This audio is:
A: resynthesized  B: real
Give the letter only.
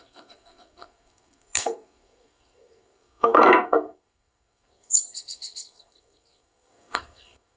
A